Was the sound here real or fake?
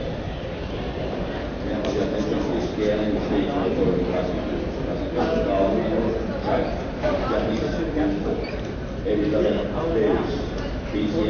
real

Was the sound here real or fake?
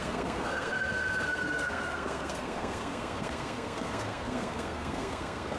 fake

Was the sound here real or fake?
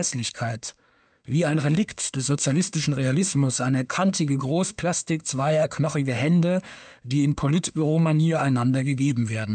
fake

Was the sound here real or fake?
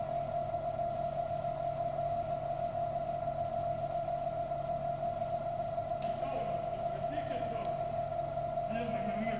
real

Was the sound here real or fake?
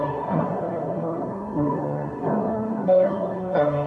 fake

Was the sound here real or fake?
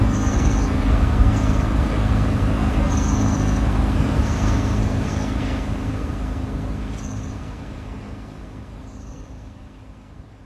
fake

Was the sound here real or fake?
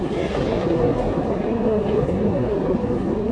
fake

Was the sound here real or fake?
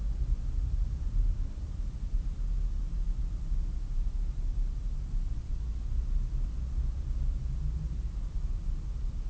real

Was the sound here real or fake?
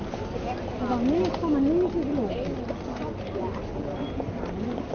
real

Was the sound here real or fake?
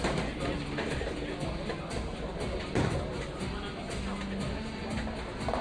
real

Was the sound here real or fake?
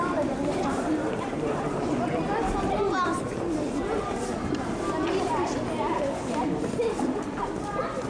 real